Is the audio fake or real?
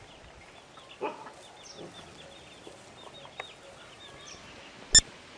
real